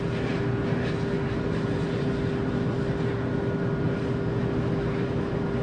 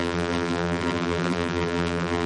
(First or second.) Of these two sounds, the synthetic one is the second